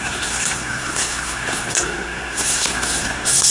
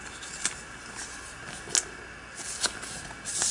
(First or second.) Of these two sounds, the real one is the second